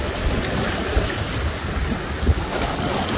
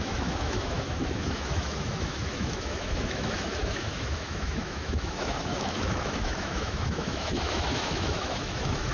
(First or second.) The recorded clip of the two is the first